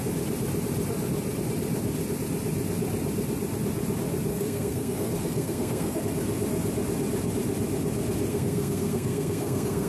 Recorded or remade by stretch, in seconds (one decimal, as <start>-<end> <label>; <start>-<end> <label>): 0.0-4.3 recorded; 4.3-6.0 remade; 6.0-8.3 recorded; 8.3-9.9 remade